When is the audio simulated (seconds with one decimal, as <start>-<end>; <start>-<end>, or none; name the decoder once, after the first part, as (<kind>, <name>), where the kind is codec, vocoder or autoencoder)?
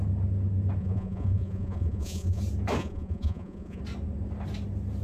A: 0.8-2.4 (vocoder, Vocos); 2.8-3.8